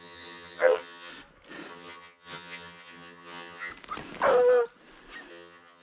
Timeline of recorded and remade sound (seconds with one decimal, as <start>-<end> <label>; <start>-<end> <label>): 0.0-1.1 remade; 1.1-1.7 recorded; 1.7-3.7 remade; 3.7-5.3 recorded; 5.3-5.8 remade